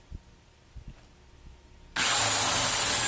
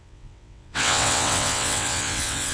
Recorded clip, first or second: first